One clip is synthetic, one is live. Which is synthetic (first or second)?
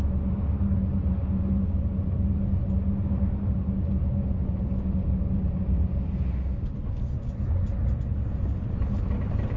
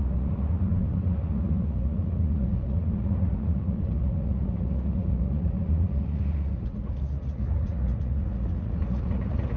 second